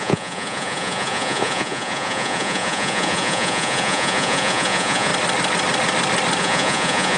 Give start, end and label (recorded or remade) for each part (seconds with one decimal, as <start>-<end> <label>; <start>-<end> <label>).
0.0-5.1 remade; 5.1-6.4 recorded; 6.4-7.2 remade